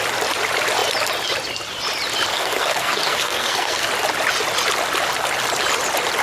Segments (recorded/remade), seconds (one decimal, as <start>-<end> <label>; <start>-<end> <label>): 0.0-2.3 recorded; 2.3-3.9 remade; 3.9-6.2 recorded